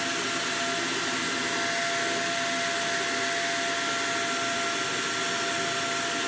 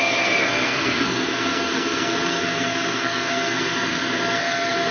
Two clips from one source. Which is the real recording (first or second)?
first